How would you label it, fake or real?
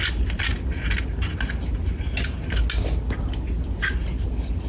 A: real